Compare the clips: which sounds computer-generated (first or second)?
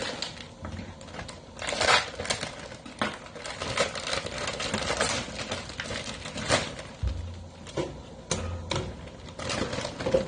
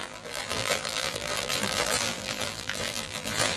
second